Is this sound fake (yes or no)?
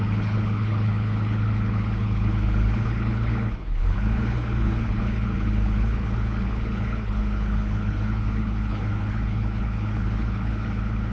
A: yes